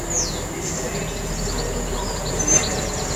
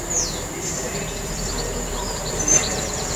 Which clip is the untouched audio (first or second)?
first